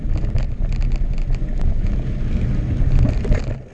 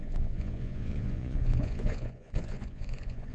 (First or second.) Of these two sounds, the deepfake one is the second